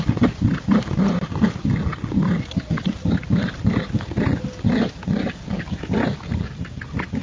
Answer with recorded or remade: recorded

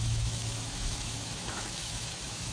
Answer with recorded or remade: remade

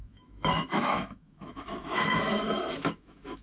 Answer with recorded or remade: remade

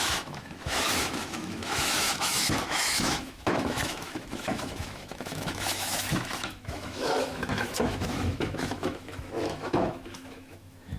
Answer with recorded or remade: remade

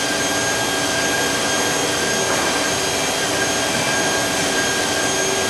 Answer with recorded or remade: recorded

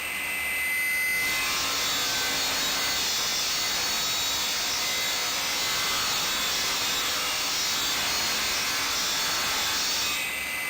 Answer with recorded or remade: recorded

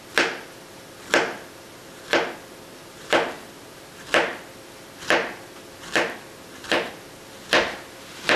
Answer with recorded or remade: recorded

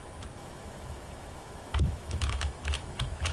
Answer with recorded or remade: remade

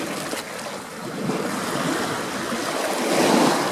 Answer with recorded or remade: recorded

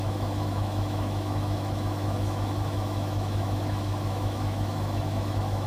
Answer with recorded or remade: remade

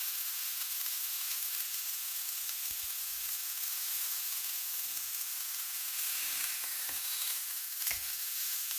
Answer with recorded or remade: remade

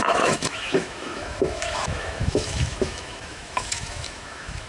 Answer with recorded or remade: remade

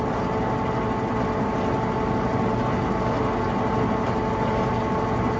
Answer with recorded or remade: recorded